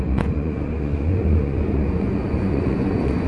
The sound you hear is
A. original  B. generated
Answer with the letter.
B